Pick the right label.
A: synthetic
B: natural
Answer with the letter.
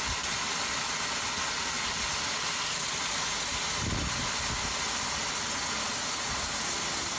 B